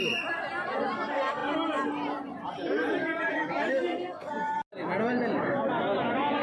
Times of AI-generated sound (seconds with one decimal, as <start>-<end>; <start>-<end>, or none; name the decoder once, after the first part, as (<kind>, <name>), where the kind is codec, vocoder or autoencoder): 3.7-4.3 (codec, SNAC)